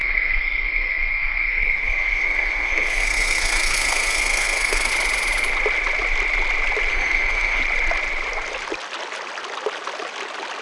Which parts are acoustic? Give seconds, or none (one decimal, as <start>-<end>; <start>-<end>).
4.9-6.9; 7.6-10.6